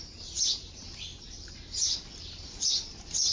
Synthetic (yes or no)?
no